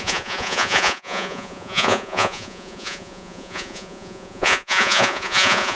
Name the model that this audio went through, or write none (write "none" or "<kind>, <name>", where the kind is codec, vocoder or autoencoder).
vocoder, Vocos